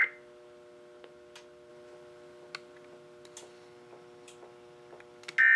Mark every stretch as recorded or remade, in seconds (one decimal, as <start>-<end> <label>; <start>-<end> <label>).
0.0-5.6 recorded